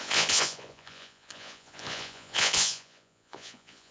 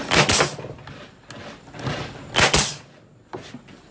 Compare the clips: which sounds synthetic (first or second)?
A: first